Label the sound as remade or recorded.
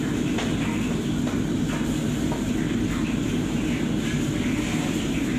recorded